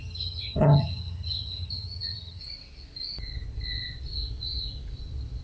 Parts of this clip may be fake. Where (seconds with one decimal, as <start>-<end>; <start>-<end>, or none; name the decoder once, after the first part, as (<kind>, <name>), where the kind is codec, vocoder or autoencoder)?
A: 0.0-2.4 (vocoder, HiFi-GAN)